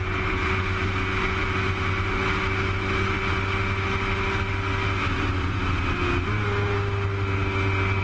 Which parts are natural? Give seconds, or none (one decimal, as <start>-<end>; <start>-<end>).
0.0-8.0